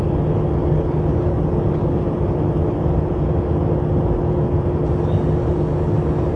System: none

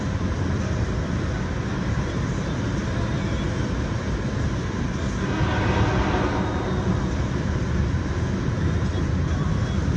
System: none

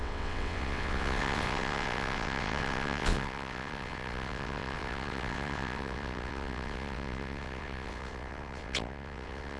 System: vocoder, WaveNeXt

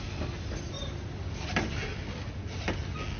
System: none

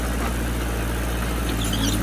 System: none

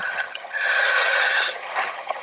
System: vocoder, HiFi-GAN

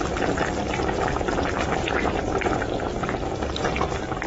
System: none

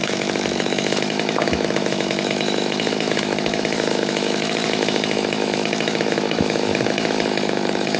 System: autoencoder, DAC-VAE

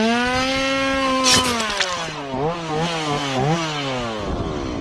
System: none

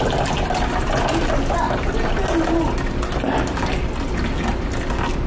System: none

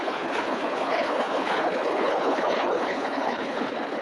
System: codec, HILCodec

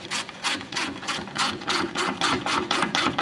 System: vocoder, Vocos